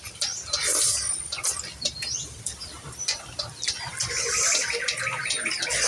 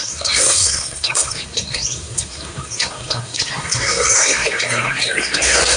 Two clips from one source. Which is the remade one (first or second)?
second